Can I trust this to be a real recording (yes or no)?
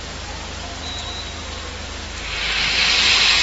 yes